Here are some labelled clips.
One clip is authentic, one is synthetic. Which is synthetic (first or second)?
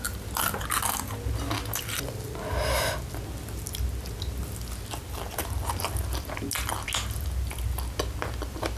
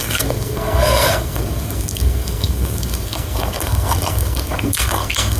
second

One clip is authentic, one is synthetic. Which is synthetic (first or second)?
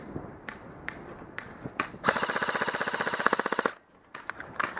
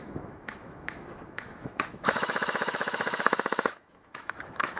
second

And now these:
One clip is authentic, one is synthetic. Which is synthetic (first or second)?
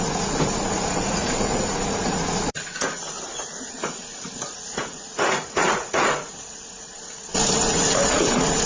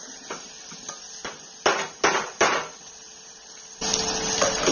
first